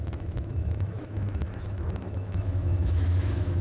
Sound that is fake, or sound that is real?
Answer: fake